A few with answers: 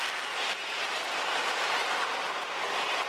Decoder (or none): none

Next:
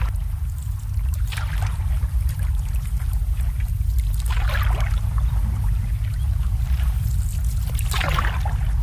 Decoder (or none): none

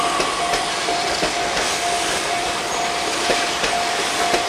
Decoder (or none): none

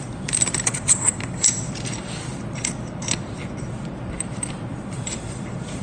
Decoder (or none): vocoder, BigVGAN v2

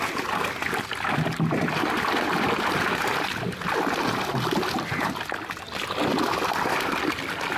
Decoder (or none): none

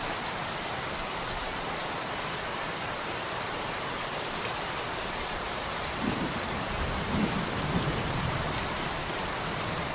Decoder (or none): vocoder, BigVGAN v2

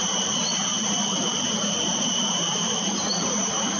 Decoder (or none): vocoder, BigVGAN v2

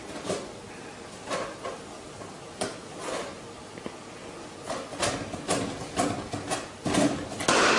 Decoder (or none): none